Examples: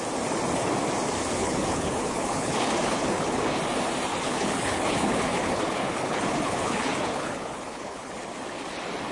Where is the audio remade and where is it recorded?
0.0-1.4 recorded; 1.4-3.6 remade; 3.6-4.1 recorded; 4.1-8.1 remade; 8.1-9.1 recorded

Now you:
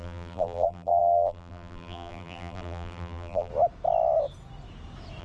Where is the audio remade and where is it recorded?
0.0-3.5 remade; 3.5-5.2 recorded